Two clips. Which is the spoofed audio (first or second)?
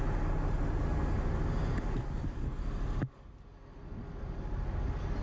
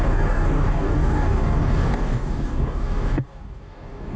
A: second